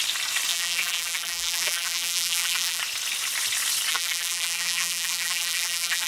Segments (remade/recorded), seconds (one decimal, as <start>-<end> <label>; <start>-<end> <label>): 0.0-0.5 recorded; 0.5-2.8 remade; 2.8-3.9 recorded; 3.9-6.1 remade

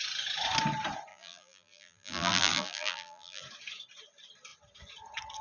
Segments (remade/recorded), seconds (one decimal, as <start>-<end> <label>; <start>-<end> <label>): 0.0-1.1 recorded; 1.1-3.4 remade; 3.4-5.4 recorded